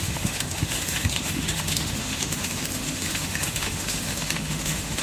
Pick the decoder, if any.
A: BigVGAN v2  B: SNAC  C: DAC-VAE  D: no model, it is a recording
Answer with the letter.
C